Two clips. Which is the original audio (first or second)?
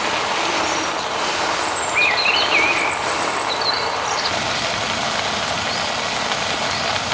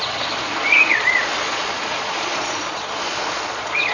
first